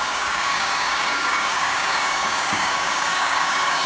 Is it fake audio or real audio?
fake